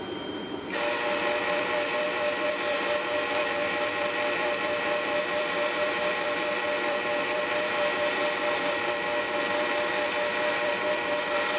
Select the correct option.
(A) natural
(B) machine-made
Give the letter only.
B